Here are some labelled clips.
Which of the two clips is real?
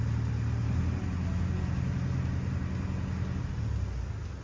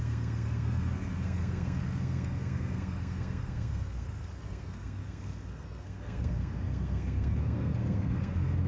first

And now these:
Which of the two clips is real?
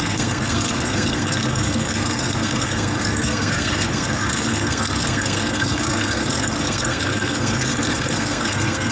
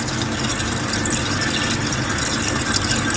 second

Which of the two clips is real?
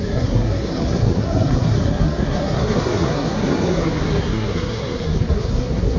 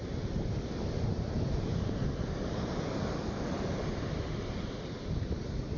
second